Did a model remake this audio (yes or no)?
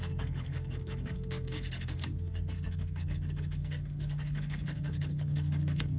yes